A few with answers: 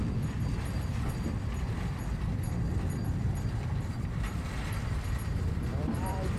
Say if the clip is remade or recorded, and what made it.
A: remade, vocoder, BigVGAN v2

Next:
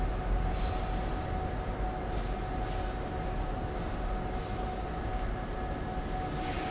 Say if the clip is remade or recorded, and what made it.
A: recorded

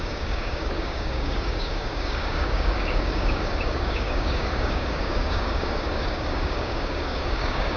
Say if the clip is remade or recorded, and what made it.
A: remade, codec, DAC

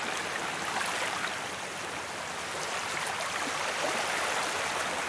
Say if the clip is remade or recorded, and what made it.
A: remade, vocoder, BigVGAN v2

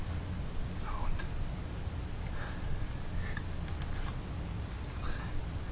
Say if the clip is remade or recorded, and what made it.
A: recorded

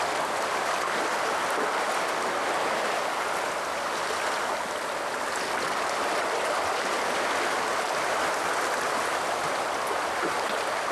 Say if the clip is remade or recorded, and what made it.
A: recorded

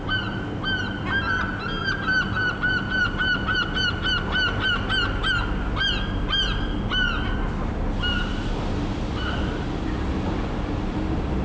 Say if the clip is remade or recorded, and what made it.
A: recorded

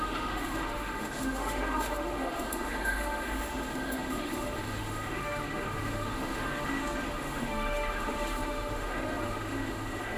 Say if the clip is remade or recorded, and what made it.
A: remade, autoencoder, DAC-VAE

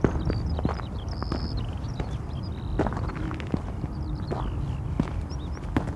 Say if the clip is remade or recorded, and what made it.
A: recorded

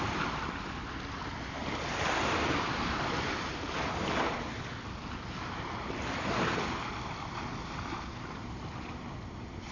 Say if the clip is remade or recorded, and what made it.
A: recorded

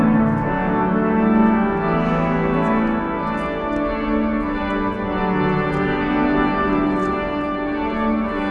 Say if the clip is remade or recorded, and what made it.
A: recorded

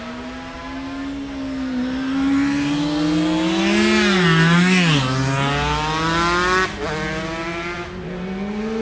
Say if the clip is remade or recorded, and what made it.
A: recorded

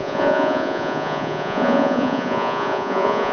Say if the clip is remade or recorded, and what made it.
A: remade, vocoder, Vocos